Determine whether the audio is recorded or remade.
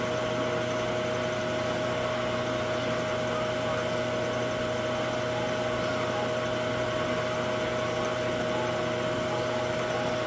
recorded